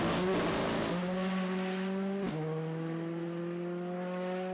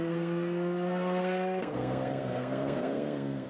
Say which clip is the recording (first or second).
first